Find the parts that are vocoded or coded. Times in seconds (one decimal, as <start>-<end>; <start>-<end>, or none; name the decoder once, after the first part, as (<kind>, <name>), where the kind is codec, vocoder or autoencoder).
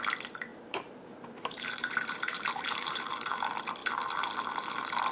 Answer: 0.5-3.1 (vocoder, BigVGAN v2)